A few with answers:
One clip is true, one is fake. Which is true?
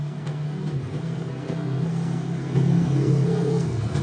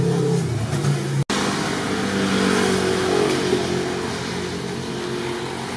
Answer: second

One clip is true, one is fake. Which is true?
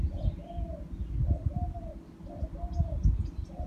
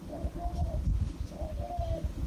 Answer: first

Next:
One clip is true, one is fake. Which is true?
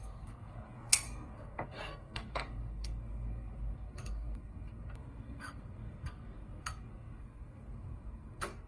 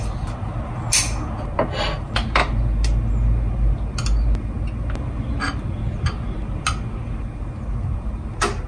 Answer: second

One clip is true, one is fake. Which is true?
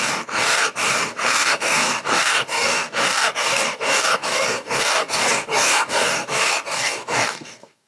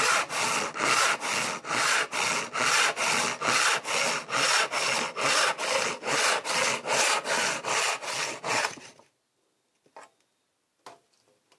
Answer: second